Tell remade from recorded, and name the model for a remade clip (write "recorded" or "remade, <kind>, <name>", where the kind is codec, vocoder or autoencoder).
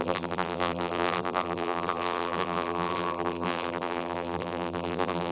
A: remade, vocoder, BigVGAN v2